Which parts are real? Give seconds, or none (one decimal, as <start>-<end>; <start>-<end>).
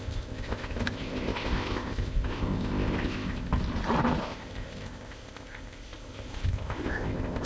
3.6-4.2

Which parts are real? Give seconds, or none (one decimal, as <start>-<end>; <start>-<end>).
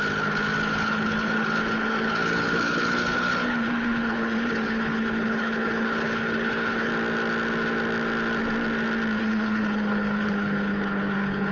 6.9-9.2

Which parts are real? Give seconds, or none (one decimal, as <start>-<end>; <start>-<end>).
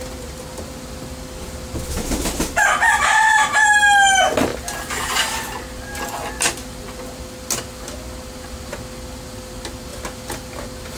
0.0-11.0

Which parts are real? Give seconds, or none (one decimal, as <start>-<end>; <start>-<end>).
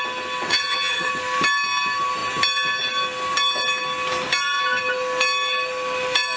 0.0-0.5; 1.1-6.4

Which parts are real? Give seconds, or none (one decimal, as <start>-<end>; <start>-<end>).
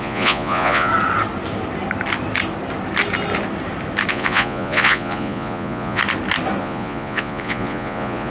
0.9-4.1; 6.0-6.6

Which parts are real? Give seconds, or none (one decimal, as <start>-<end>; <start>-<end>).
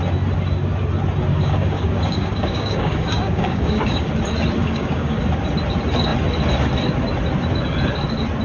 0.0-1.3; 4.1-4.6; 5.2-8.4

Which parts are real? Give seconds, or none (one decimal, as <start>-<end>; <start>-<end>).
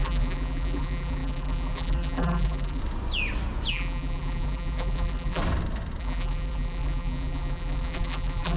2.8-3.7; 5.4-6.0